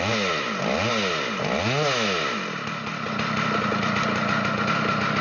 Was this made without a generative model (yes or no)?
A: yes